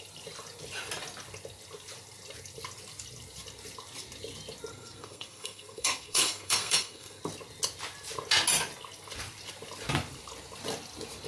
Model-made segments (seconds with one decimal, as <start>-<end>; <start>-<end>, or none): 4.7-7.2